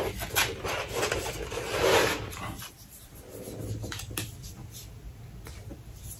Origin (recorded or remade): recorded